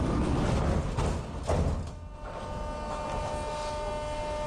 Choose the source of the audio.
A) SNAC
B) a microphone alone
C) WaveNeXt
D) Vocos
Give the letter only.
B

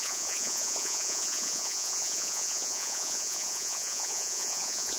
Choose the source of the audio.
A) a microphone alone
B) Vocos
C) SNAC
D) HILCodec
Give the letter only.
B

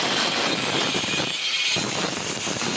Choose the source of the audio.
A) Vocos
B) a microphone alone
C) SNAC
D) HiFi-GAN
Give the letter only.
B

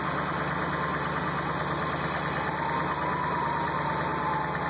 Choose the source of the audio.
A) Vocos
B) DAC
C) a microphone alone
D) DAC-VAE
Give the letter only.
C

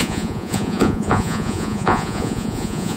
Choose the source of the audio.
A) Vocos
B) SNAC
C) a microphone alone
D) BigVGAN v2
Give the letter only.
A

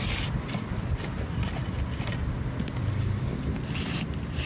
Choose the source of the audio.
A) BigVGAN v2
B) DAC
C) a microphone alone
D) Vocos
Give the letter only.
C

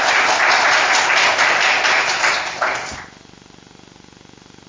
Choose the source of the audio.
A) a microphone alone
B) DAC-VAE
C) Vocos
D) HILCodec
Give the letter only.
A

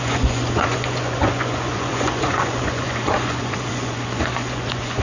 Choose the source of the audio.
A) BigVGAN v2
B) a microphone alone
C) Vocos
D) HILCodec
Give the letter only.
C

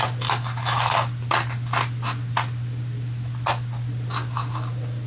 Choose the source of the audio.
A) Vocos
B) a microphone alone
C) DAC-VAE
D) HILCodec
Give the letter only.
B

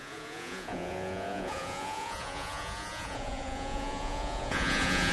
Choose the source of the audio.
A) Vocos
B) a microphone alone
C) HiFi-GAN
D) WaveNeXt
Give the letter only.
A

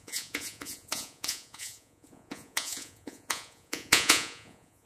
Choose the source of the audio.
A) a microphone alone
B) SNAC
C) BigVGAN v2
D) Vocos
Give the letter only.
D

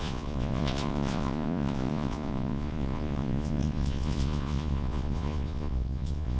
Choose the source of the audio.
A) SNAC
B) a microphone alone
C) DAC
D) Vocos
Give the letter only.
D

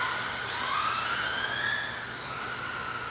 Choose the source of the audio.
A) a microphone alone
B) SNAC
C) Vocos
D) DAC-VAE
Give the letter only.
A